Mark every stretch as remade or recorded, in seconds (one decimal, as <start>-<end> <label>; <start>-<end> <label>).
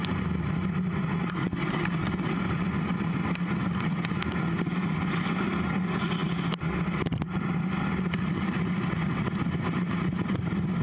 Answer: 0.0-10.8 recorded